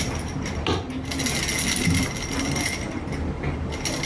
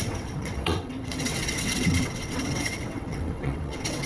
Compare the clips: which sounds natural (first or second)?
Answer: first